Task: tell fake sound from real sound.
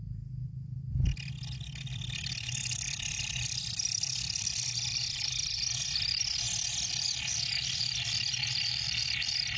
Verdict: real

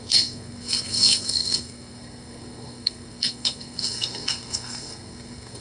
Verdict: fake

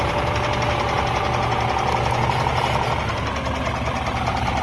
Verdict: real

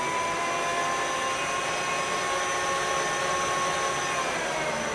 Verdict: real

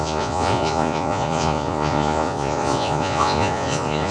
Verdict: fake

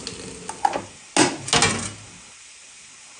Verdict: real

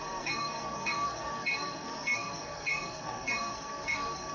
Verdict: fake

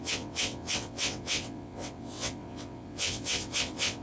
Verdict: fake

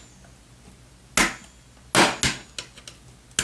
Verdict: real